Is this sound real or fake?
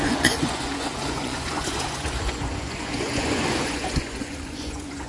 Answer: fake